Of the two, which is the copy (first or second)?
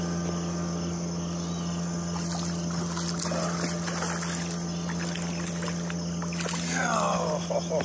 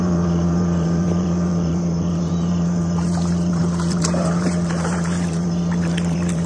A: second